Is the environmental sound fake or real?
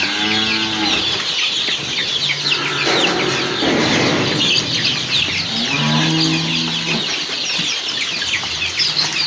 real